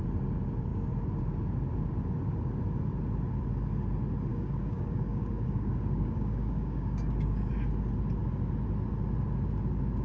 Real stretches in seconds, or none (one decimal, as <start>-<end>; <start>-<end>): 0.0-4.3; 7.5-10.0